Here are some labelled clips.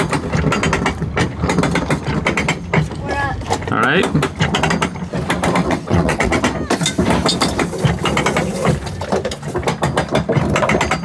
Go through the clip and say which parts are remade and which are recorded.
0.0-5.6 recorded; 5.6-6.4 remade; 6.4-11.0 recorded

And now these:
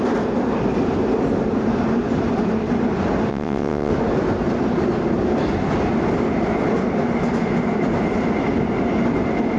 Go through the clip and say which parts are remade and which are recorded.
0.0-3.3 recorded; 3.3-3.9 remade; 3.9-9.6 recorded

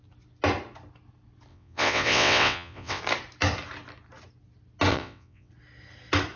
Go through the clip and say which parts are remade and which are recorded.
0.0-1.5 recorded; 1.5-3.0 remade; 3.0-4.9 recorded; 4.9-5.5 remade; 5.5-6.4 recorded